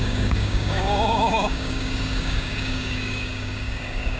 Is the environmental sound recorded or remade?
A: remade